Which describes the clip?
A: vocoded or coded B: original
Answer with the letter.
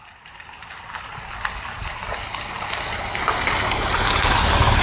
B